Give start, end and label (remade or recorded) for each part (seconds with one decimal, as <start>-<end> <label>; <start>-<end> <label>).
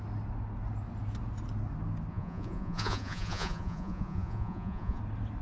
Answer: 0.0-2.1 recorded; 2.1-5.0 remade; 5.0-5.4 recorded